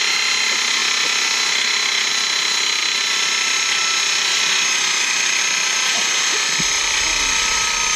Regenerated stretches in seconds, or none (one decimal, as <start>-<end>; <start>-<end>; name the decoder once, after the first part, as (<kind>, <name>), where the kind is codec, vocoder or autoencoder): none